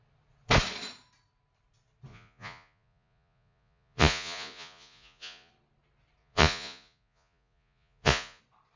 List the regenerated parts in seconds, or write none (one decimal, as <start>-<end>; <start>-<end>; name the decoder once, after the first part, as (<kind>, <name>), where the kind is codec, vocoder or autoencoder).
2.1-5.5 (vocoder, Vocos); 6.2-8.4